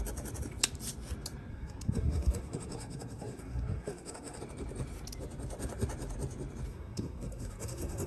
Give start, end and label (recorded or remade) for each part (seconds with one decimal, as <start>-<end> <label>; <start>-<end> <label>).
0.0-1.5 recorded; 1.5-4.4 remade; 4.4-6.7 recorded; 6.7-8.1 remade